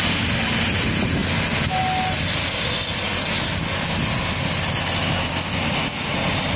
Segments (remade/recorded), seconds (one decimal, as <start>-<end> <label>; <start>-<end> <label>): 0.0-6.6 recorded